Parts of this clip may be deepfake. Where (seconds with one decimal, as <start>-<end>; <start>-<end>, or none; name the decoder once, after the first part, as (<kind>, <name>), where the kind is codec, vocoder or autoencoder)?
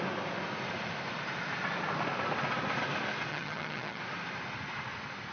3.3-4.0 (vocoder, HiFi-GAN)